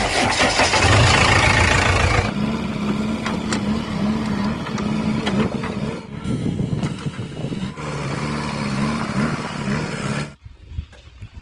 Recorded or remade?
recorded